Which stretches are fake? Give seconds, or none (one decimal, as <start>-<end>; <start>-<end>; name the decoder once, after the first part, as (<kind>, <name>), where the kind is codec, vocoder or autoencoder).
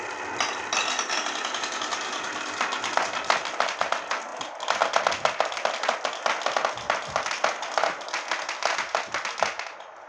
none